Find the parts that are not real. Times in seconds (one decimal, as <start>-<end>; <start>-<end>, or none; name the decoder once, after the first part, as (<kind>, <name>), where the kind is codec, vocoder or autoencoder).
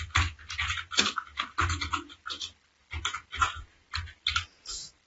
none